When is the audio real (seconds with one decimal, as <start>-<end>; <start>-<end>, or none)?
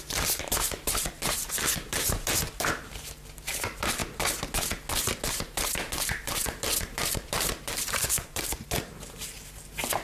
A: 4.0-5.3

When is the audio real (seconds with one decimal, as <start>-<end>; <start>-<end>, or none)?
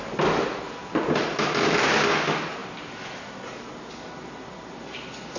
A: 0.0-5.4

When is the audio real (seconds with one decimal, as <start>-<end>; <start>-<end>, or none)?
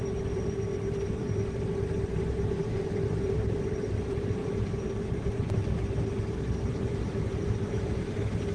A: none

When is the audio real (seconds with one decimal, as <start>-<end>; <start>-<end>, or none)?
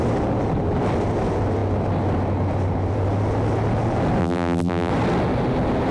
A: 0.0-4.2; 4.9-5.9